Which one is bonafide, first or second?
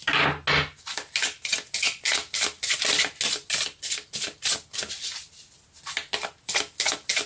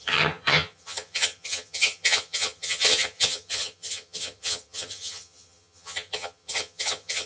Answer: first